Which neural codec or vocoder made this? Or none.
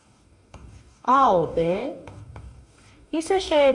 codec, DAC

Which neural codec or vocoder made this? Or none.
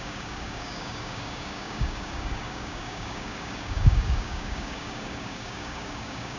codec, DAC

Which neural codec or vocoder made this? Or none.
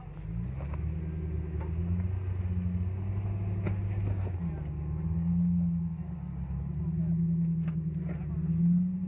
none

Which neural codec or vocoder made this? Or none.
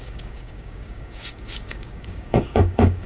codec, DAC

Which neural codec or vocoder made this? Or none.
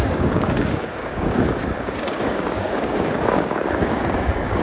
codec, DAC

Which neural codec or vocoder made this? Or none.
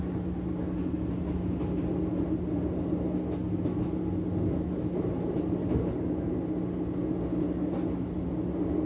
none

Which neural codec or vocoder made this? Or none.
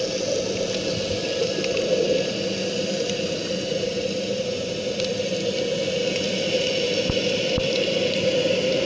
none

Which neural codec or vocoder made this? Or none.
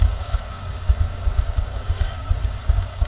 codec, DAC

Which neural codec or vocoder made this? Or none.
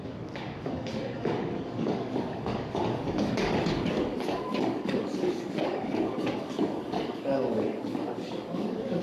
codec, DAC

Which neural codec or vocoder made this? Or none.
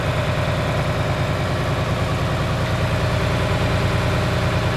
none